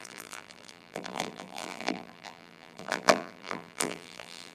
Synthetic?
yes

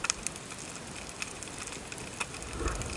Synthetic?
no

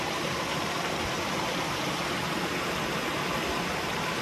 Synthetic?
no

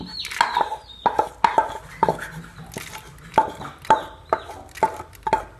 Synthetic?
no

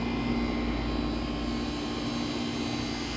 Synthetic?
no